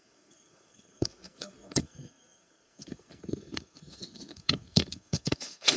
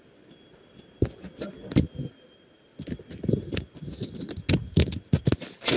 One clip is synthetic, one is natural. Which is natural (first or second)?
second